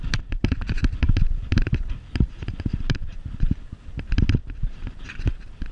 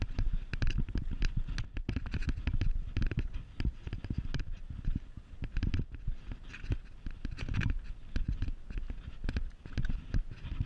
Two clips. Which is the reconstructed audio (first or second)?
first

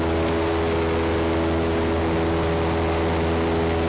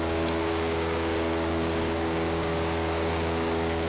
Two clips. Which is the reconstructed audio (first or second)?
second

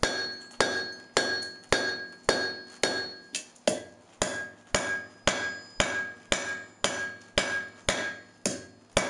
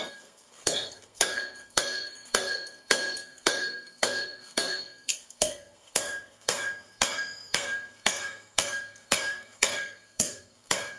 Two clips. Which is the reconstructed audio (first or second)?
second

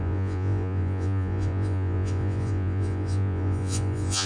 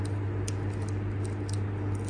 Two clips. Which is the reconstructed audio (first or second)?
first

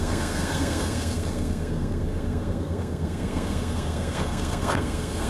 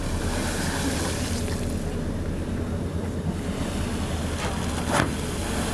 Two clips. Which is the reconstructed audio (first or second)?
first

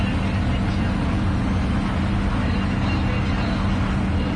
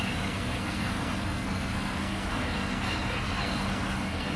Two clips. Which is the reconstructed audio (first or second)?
second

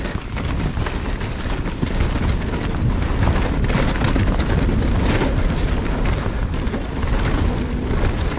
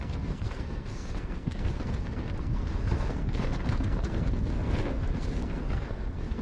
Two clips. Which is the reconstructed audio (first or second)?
second